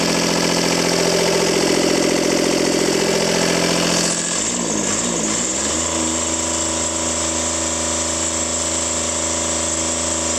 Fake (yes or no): no